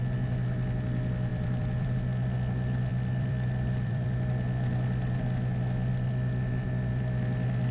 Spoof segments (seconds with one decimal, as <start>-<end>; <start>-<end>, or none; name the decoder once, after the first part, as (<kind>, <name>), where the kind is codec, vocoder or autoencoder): 1.3-1.9 (vocoder, BigVGAN v2); 2.9-4.3